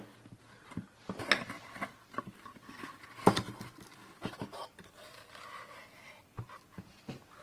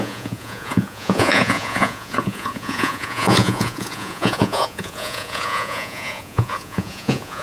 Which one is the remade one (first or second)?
second